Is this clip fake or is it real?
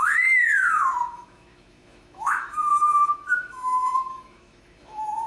fake